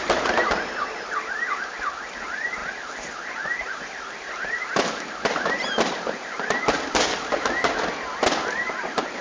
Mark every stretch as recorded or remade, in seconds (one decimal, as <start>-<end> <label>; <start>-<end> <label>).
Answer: 0.0-9.2 recorded